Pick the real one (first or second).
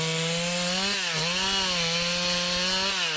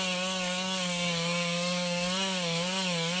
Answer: first